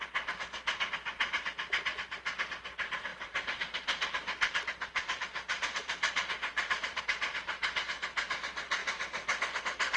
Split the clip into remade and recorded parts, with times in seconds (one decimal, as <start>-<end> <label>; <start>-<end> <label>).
0.0-3.1 recorded; 3.1-7.0 remade; 7.0-10.0 recorded